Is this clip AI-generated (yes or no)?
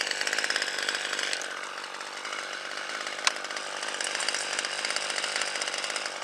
no